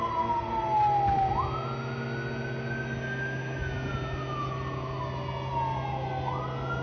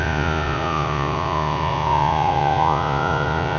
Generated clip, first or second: second